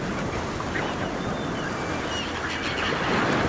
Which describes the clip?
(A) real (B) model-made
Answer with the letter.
A